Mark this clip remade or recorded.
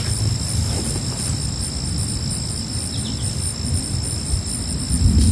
recorded